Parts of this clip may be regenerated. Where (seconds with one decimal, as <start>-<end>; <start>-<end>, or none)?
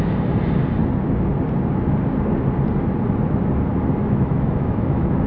4.0-5.3